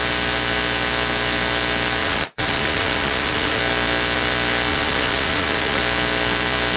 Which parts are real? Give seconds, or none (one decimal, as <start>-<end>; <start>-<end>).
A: 0.0-2.0; 3.6-4.7; 5.8-6.8